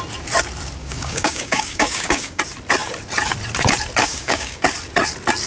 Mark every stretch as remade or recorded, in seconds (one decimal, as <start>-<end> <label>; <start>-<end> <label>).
0.0-0.8 recorded; 0.8-2.4 remade; 2.4-4.0 recorded; 4.0-4.6 remade; 4.6-5.5 recorded